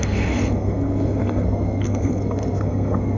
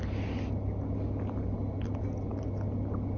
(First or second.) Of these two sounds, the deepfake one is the first